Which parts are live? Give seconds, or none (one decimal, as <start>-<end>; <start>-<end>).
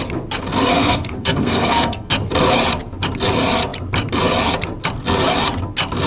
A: 0.0-0.7; 2.1-6.1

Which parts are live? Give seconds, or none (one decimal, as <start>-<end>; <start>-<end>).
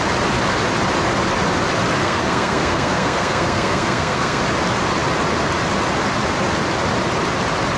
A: 0.0-2.0; 4.4-7.8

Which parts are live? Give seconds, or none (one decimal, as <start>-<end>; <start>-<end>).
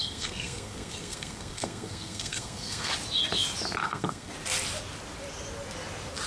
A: 2.9-3.8; 4.3-6.3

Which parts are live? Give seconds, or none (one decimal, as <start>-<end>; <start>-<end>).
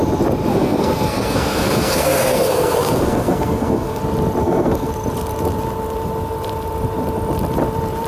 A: 0.0-0.5; 4.0-4.4; 4.9-8.1